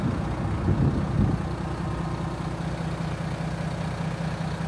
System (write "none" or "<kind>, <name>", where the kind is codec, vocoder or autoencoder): none